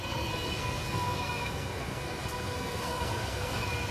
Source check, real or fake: fake